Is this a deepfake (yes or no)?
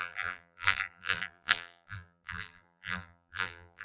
yes